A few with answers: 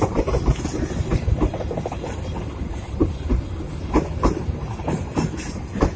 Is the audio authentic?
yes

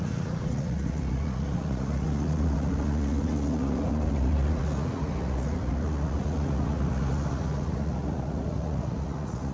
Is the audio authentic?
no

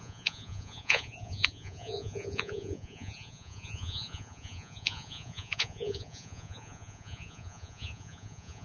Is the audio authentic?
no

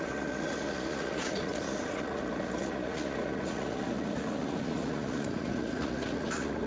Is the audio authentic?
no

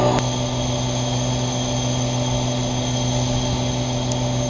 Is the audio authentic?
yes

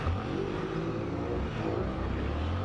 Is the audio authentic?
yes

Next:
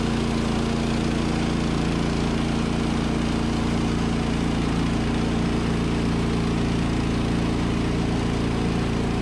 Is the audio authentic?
yes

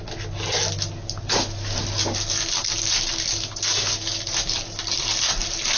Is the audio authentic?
yes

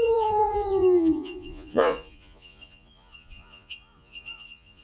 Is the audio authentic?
no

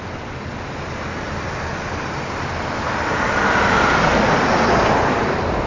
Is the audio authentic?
yes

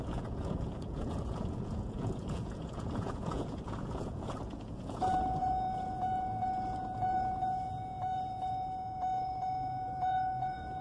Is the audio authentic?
no